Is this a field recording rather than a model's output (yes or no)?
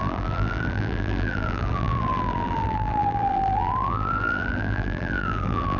no